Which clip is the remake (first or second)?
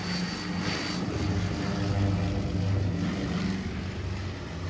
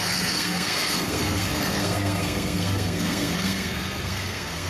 second